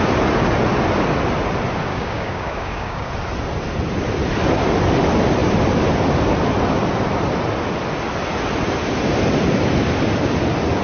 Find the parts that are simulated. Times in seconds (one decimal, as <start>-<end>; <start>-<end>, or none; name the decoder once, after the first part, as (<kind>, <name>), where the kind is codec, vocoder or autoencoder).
1.9-3.1 (codec, DAC)